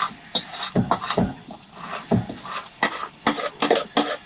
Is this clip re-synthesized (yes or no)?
no